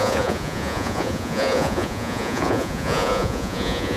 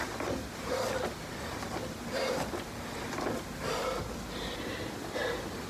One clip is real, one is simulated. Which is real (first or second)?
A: second